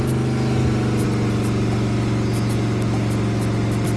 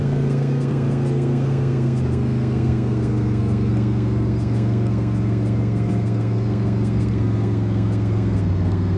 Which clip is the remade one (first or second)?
second